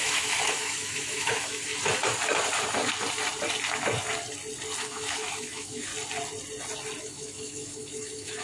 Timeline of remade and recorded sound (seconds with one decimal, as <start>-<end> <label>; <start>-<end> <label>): 0.0-1.7 remade; 1.7-4.8 recorded; 4.8-5.9 remade; 5.9-7.0 recorded; 7.0-8.4 remade